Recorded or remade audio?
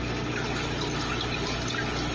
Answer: recorded